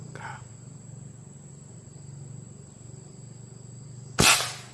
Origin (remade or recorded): recorded